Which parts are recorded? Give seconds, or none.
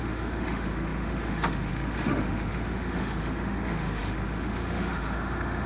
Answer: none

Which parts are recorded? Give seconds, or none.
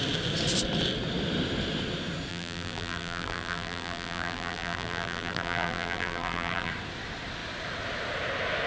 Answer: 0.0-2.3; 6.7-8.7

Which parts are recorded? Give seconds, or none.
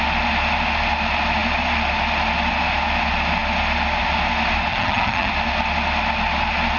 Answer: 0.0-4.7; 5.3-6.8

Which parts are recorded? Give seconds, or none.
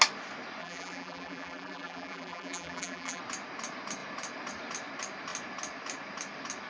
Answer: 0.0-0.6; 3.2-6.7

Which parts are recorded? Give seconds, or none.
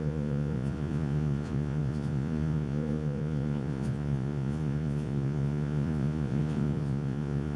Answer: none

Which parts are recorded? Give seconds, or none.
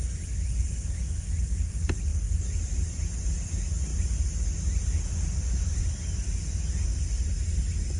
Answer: 0.0-2.1; 3.0-8.0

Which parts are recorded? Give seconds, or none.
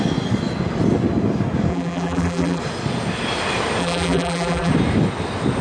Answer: 0.0-1.7; 2.6-3.8; 4.7-5.6